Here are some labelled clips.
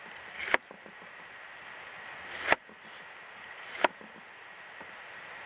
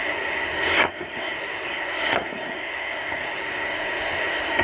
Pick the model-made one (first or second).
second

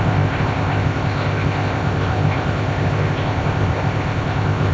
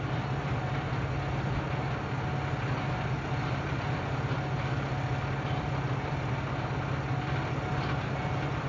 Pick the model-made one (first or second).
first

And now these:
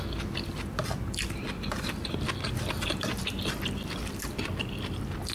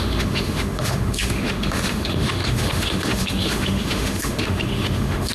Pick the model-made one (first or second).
second